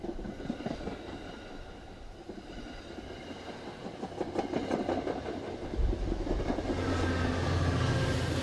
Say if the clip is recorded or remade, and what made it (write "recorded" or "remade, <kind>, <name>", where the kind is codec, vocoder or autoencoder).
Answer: recorded